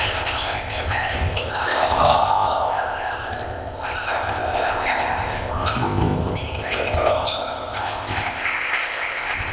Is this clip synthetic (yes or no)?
yes